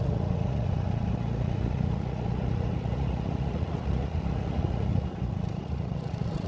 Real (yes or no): no